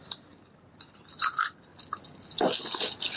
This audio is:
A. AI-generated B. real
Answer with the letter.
B